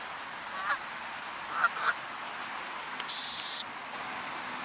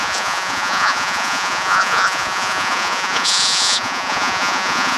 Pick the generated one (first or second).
second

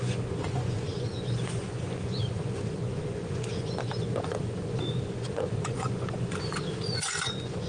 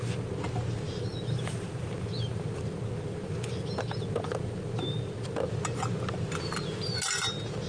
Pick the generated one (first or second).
first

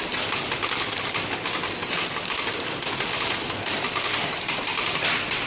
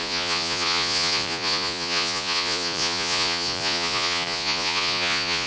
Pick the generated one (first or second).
second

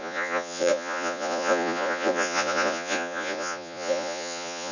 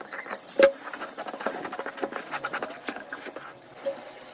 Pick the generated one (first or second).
first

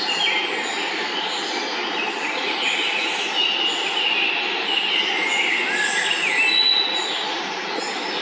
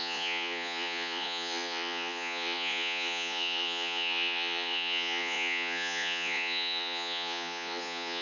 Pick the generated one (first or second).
second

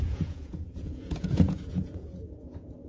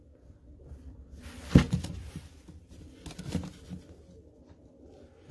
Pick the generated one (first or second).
first